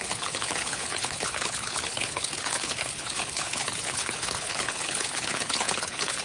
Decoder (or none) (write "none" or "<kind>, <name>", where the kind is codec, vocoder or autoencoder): codec, HILCodec